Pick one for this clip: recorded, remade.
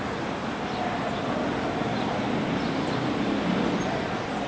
recorded